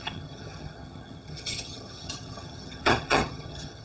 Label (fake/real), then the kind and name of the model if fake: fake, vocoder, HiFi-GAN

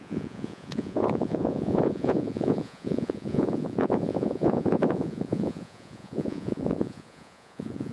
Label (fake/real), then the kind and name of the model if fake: fake, vocoder, Vocos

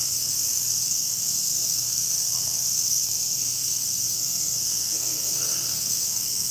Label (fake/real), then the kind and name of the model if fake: fake, codec, SNAC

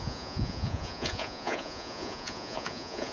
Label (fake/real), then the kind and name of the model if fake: fake, vocoder, Vocos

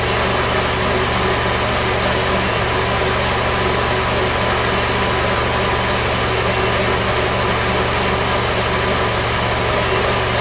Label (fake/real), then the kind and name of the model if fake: real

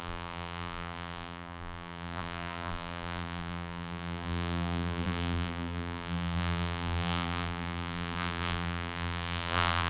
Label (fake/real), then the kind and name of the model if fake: fake, vocoder, BigVGAN v2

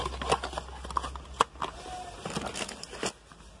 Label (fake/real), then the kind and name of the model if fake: real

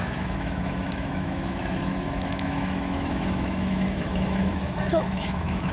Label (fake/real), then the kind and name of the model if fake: fake, autoencoder, DAC-VAE